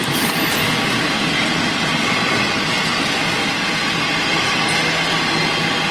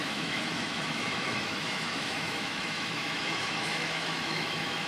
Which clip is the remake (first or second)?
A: second